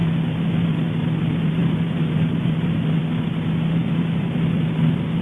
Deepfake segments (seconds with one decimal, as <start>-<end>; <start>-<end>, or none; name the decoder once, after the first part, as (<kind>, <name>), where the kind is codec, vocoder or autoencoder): none